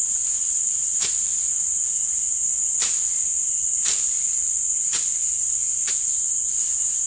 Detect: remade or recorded recorded